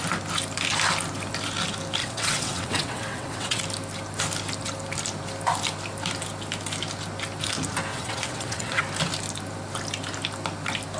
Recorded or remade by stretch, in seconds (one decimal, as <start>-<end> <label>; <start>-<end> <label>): 0.0-2.0 recorded; 2.0-3.6 remade; 3.6-7.9 recorded; 7.9-8.8 remade; 8.8-11.0 recorded